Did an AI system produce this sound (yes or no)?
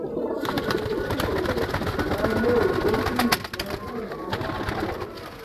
no